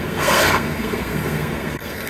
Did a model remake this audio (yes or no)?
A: yes